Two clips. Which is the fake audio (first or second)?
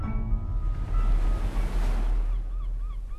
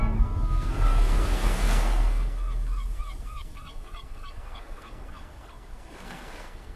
second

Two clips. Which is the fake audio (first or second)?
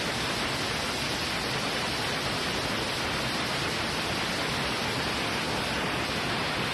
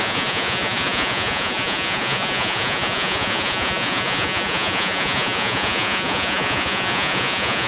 second